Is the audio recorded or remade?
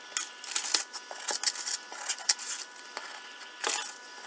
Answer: recorded